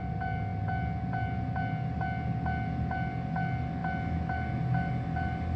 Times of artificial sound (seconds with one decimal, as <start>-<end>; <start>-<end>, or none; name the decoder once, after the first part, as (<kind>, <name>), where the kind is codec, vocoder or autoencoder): none